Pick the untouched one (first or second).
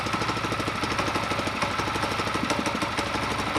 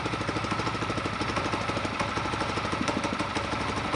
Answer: first